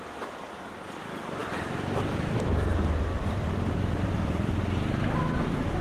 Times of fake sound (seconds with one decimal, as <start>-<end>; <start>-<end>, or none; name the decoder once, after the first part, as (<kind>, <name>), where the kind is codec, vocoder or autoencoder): 1.4-2.5 (vocoder, BigVGAN v2); 3.1-4.6